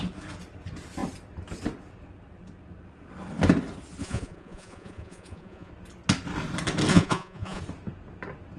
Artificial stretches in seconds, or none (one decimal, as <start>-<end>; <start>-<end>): 4.0-5.7; 6.9-7.6